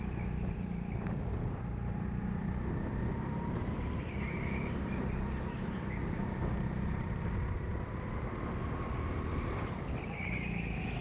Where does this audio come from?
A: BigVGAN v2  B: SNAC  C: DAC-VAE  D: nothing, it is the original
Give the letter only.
A